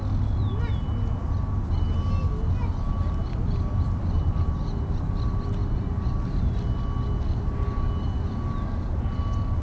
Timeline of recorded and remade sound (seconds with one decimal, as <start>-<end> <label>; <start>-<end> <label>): 0.0-9.6 recorded